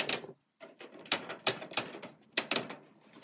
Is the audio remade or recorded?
remade